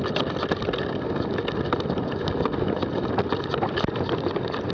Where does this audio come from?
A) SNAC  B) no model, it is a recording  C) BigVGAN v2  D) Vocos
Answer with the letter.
B